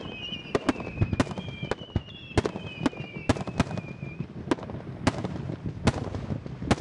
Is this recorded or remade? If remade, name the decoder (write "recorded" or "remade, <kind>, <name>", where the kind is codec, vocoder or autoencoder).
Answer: recorded